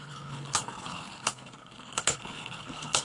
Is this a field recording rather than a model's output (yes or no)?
no